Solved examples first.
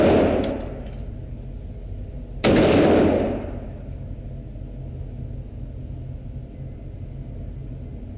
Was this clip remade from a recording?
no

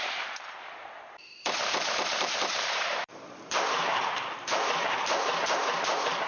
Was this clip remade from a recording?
yes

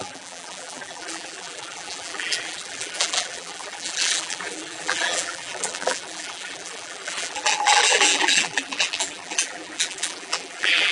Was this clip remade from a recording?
yes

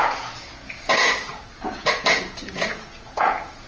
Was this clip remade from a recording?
yes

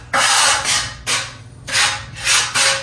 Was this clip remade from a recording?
no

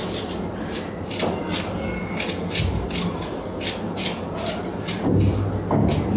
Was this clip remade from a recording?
no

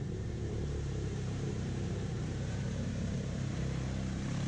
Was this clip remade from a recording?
yes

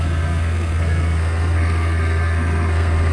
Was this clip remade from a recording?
yes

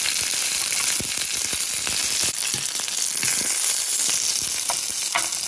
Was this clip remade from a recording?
no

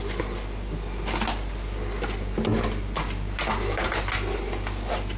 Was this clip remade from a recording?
no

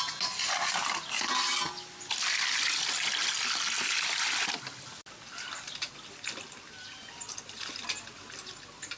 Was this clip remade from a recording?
no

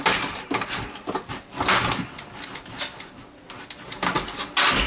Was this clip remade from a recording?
no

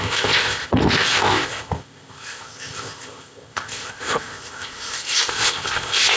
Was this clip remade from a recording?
yes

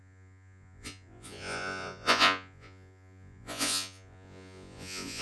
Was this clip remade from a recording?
yes